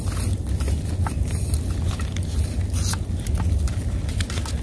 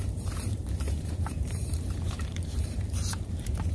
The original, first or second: first